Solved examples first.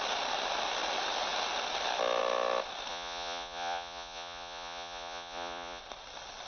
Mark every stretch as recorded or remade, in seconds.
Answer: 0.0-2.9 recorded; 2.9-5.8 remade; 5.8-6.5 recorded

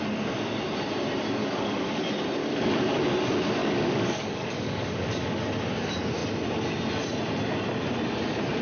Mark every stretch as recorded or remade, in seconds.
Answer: 0.0-1.4 recorded; 1.4-2.0 remade; 2.0-2.4 recorded; 2.4-3.0 remade; 3.0-3.6 recorded; 3.6-5.4 remade; 5.4-8.6 recorded

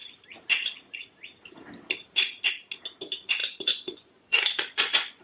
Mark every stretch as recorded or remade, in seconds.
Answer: 0.0-3.4 recorded; 3.4-5.2 remade

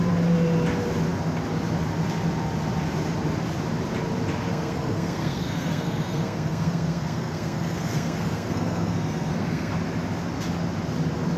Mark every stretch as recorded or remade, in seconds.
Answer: 0.0-4.5 recorded; 4.5-9.7 remade; 9.7-11.4 recorded

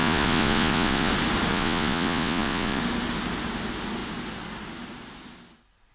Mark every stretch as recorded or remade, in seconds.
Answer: 0.0-1.1 remade; 1.1-1.5 recorded; 1.5-2.8 remade; 2.8-5.9 recorded

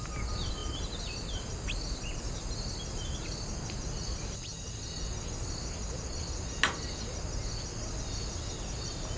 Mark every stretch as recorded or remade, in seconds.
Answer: 0.0-9.2 recorded

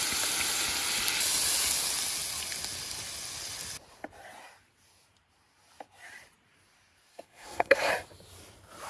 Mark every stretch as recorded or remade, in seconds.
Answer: 0.0-7.1 recorded; 7.1-7.9 remade; 7.9-8.9 recorded

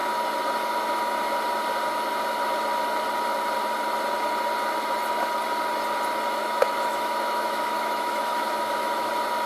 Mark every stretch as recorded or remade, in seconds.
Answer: 0.0-6.4 recorded; 6.4-9.1 remade; 9.1-9.5 recorded